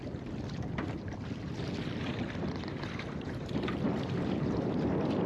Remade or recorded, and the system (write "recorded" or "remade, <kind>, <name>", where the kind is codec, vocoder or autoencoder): remade, vocoder, BigVGAN v2